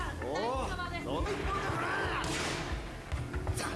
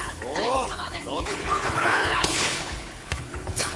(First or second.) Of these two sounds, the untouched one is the first